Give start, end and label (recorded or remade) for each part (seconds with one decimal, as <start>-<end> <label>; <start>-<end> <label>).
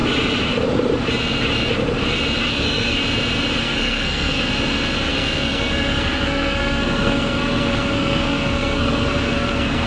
0.0-2.5 recorded; 2.5-3.0 remade; 3.0-3.6 recorded; 3.6-4.5 remade; 4.5-5.1 recorded; 5.1-9.9 remade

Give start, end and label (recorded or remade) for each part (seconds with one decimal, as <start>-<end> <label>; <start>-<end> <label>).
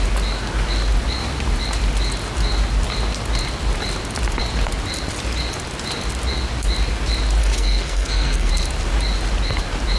0.0-7.4 recorded; 7.4-8.5 remade; 8.5-10.0 recorded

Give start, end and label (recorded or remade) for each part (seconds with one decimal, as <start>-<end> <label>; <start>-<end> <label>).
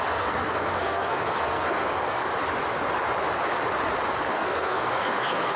0.0-2.3 remade; 2.3-4.3 recorded; 4.3-5.6 remade